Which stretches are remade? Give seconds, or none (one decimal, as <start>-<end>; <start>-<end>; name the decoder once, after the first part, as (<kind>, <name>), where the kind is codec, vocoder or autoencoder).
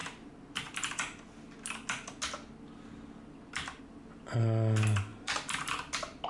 5.1-5.7 (vocoder, BigVGAN v2)